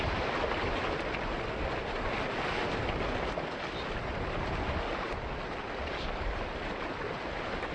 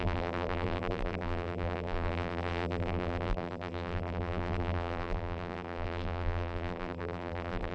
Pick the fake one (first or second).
second